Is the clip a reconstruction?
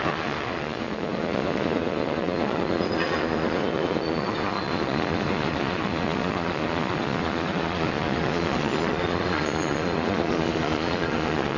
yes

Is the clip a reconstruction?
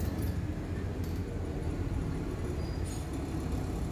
no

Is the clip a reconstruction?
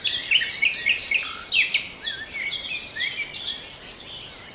no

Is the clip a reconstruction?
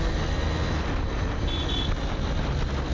no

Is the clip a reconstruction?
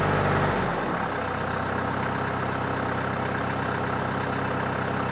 no